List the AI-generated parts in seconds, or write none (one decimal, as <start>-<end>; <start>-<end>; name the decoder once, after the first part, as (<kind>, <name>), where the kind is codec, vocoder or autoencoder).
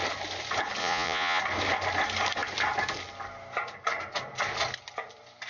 0.8-1.4 (vocoder, Vocos)